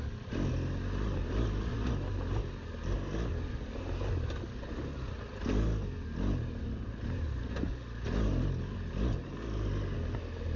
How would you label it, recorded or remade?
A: recorded